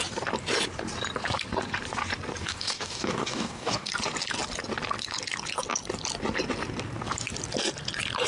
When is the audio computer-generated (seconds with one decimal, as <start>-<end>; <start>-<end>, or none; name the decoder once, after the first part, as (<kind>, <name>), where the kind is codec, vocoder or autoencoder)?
2.4-3.9 (codec, DAC)